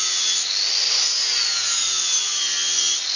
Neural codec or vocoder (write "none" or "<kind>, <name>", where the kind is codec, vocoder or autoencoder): none